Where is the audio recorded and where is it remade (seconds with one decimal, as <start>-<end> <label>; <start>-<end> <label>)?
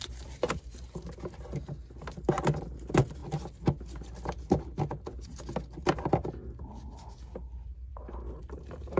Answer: 0.0-9.0 recorded